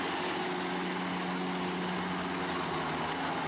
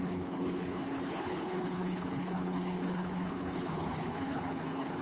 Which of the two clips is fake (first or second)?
second